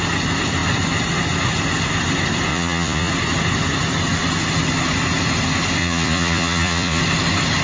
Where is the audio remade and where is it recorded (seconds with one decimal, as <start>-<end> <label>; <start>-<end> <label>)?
0.0-2.5 recorded; 2.5-3.1 remade; 3.1-5.8 recorded; 5.8-7.0 remade; 7.0-7.6 recorded